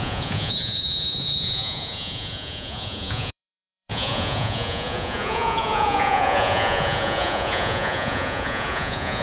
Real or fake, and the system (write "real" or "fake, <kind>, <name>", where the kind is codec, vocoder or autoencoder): fake, vocoder, Vocos